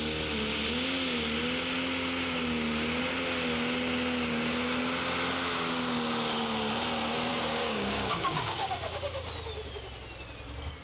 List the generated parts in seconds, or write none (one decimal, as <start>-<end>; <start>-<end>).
7.3-8.7